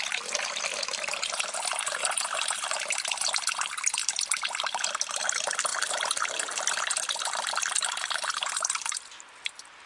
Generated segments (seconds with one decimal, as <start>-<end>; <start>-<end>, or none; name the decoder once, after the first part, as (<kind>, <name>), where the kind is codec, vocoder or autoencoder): none